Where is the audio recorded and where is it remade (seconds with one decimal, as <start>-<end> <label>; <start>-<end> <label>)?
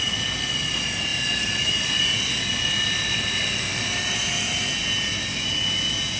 0.0-1.1 recorded; 1.1-4.8 remade; 4.8-6.2 recorded